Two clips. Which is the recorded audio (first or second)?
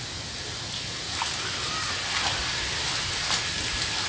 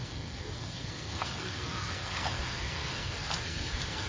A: first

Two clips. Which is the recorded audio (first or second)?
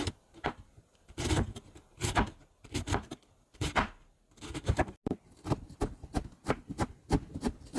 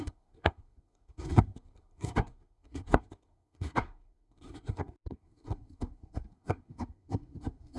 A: first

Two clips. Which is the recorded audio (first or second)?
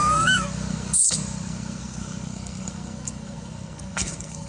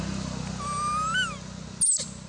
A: second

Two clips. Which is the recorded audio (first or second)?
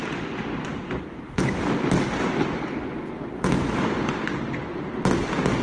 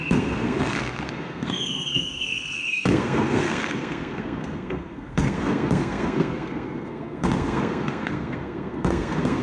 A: first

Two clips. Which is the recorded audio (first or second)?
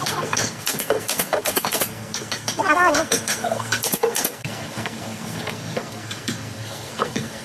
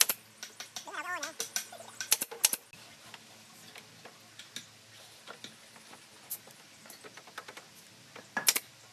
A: second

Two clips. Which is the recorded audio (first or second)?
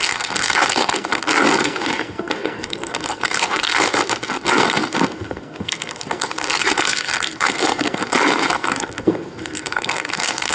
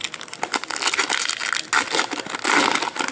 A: second